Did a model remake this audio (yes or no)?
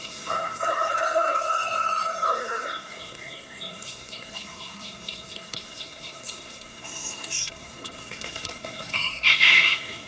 yes